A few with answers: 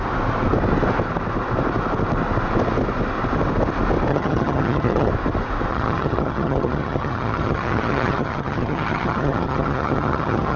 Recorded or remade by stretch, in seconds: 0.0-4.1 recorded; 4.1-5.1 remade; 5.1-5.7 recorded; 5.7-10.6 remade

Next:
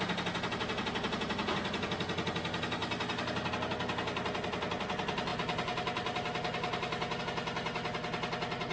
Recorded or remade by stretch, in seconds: 0.0-8.7 recorded